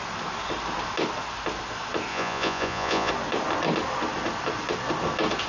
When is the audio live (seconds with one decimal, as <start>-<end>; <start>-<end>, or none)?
0.0-2.1; 3.1-5.5